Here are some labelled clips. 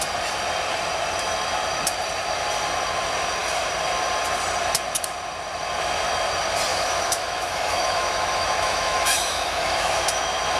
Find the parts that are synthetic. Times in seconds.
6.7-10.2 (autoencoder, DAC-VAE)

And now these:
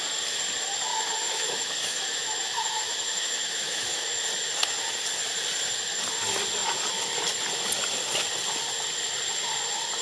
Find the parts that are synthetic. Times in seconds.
0.9-4.2 (autoencoder, DAC-VAE)

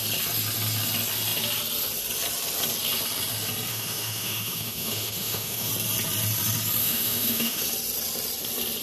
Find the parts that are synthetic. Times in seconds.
3.7-5.7 (autoencoder, DAC-VAE); 6.8-7.6

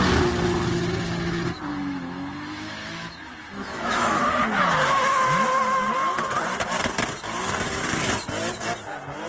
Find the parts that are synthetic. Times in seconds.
1.7-4.2 (autoencoder, DAC-VAE)